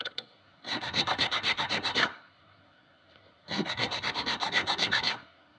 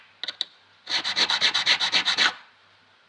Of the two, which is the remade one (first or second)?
first